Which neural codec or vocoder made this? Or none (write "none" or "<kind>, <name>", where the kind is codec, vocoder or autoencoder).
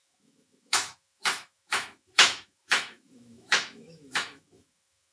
autoencoder, DAC-VAE